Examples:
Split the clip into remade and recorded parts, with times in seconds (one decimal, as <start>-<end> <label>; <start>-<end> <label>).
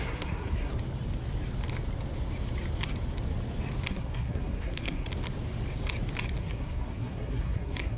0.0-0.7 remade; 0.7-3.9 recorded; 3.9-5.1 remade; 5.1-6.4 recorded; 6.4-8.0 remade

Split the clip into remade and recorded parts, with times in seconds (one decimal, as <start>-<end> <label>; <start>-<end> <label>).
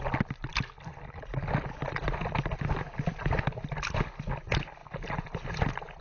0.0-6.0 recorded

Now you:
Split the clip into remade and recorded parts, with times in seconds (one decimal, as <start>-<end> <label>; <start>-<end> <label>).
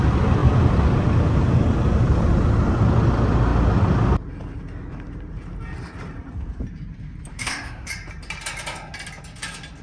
0.0-7.3 recorded; 7.3-7.9 remade; 7.9-9.8 recorded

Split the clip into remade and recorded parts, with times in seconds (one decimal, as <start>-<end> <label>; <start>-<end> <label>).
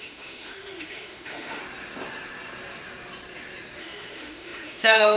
0.0-1.6 remade; 1.6-3.8 recorded; 3.8-5.2 remade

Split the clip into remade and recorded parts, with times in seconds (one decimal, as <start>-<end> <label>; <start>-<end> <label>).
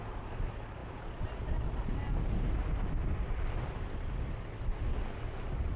0.0-3.0 recorded; 3.0-5.8 remade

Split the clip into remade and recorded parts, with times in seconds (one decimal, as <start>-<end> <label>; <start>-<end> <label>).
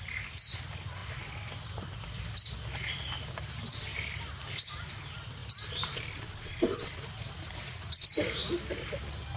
0.0-1.0 recorded; 1.0-2.5 remade; 2.5-5.4 recorded; 5.4-8.9 remade; 8.9-9.4 recorded